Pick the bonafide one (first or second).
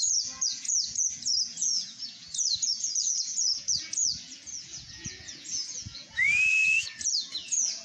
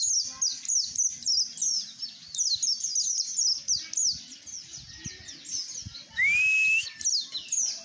second